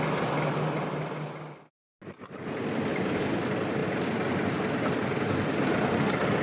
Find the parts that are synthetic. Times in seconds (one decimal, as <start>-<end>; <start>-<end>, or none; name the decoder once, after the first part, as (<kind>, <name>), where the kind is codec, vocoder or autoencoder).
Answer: 2.9-3.4 (codec, DAC)